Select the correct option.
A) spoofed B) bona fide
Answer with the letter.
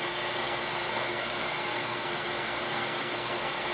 A